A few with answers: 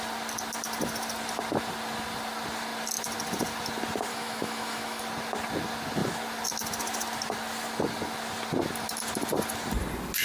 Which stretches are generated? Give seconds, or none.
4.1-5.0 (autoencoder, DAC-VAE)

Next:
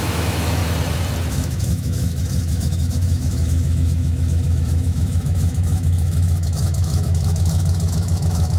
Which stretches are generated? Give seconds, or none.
0.0-0.6 (autoencoder, DAC-VAE); 1.3-8.6

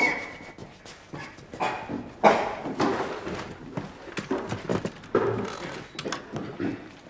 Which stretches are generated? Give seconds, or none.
none